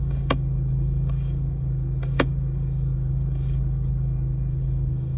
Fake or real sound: fake